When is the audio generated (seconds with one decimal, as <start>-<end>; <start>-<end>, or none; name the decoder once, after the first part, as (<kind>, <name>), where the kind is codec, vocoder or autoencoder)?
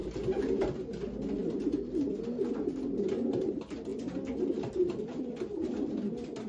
none